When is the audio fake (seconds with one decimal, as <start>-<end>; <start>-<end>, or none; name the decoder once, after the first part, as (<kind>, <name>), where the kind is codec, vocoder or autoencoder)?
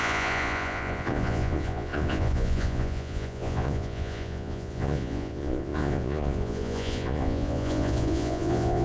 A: 0.0-8.8 (vocoder, Vocos)